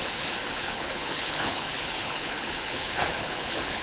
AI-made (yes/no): yes